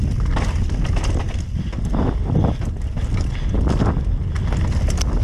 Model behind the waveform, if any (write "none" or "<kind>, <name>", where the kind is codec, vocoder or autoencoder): none